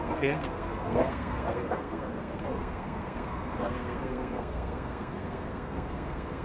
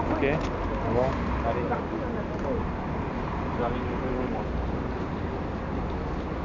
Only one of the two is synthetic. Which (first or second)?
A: first